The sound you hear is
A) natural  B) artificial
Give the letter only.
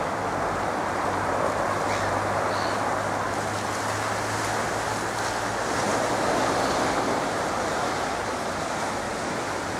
A